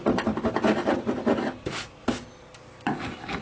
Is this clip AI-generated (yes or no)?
no